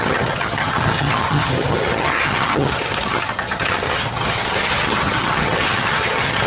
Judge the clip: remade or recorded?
remade